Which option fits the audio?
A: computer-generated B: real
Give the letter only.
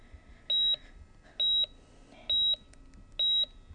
B